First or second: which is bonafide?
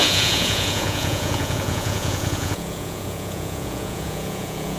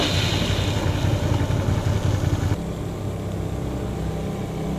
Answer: second